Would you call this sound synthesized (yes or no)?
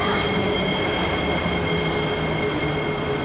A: no